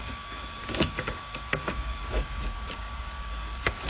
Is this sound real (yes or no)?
no